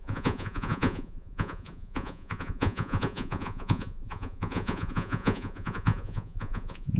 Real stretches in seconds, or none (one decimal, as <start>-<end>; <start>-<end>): none